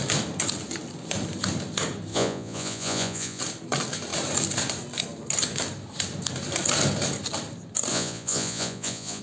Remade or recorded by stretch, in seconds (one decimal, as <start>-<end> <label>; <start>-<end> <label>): 0.0-2.1 recorded; 2.1-3.4 remade; 3.4-7.9 recorded; 7.9-9.2 remade